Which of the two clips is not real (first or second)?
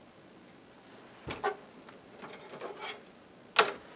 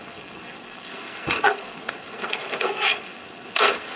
second